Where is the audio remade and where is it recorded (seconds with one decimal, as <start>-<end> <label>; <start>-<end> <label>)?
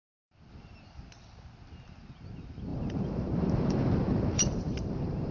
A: 0.0-2.7 recorded; 2.7-5.3 remade